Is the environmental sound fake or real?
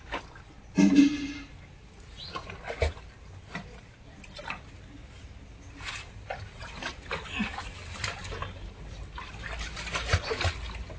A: real